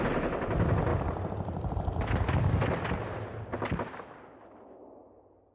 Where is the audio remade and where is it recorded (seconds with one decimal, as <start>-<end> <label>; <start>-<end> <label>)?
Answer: 0.0-5.5 recorded